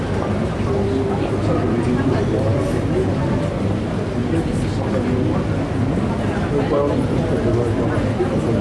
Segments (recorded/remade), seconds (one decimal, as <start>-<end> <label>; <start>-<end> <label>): 0.0-8.6 recorded